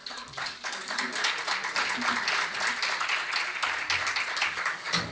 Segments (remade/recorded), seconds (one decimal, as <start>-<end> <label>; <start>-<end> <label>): 0.0-1.3 remade; 1.3-4.4 recorded; 4.4-5.1 remade